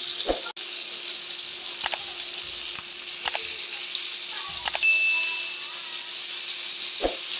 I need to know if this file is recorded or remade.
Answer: recorded